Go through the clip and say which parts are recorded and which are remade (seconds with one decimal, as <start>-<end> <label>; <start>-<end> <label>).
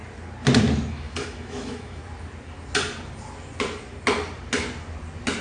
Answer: 0.0-0.9 recorded; 0.9-2.0 remade; 2.0-5.4 recorded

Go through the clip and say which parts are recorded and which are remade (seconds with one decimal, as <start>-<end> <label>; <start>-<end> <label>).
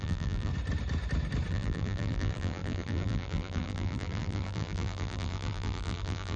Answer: 0.0-0.5 remade; 0.5-1.5 recorded; 1.5-6.4 remade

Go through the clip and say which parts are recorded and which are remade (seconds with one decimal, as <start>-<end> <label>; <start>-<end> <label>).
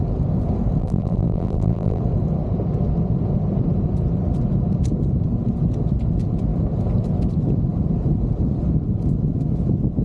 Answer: 0.0-0.8 recorded; 0.8-2.0 remade; 2.0-10.0 recorded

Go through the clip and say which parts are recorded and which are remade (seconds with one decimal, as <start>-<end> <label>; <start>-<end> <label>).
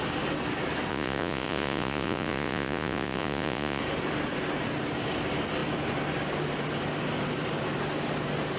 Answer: 0.0-0.9 recorded; 0.9-3.8 remade; 3.8-8.6 recorded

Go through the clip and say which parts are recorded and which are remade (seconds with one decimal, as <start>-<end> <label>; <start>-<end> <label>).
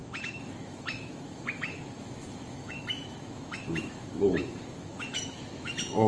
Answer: 0.0-6.1 remade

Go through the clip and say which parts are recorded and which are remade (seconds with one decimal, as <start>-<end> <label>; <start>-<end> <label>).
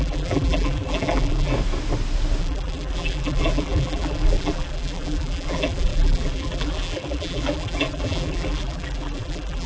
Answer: 0.0-1.5 remade; 1.5-2.4 recorded; 2.4-9.7 remade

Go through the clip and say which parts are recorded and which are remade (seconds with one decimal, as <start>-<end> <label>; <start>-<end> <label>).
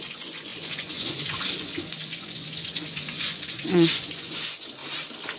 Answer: 0.0-4.8 remade; 4.8-5.4 recorded